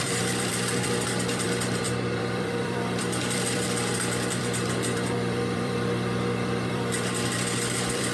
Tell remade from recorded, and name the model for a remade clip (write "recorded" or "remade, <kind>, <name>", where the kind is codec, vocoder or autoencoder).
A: remade, vocoder, BigVGAN v2